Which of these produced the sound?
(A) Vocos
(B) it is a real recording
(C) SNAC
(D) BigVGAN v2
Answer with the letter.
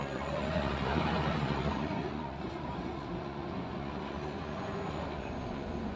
A